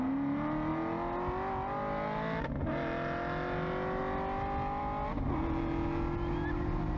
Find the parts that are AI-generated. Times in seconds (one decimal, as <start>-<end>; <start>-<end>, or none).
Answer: none